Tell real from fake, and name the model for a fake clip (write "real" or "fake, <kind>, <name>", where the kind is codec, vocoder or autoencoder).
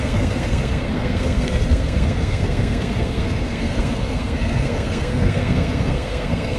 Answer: fake, codec, SNAC